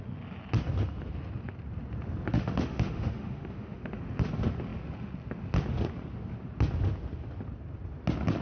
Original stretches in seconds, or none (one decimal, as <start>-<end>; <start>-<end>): 0.0-2.3; 4.0-8.4

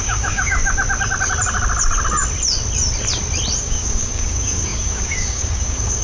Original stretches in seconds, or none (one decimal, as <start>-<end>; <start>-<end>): 0.6-3.6

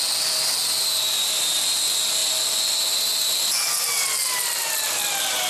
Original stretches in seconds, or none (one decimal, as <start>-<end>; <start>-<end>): 0.0-5.5